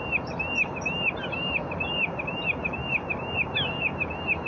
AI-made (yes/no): no